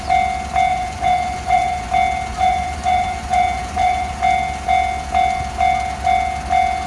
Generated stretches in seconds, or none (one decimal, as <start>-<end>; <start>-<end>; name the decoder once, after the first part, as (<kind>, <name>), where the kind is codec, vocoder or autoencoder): 0.7-1.9 (vocoder, Vocos); 2.3-4.1